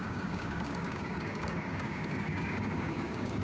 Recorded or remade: remade